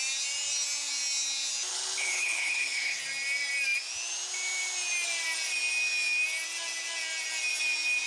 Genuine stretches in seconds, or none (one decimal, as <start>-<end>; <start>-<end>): 0.0-1.7; 3.0-8.1